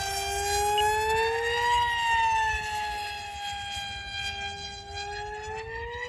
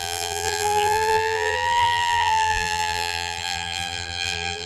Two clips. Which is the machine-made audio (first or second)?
second